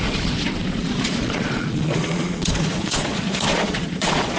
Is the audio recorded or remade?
remade